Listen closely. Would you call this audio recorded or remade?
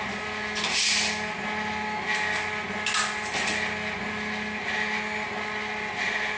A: recorded